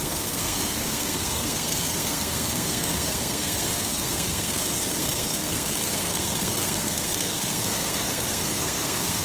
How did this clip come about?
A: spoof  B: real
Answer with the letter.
A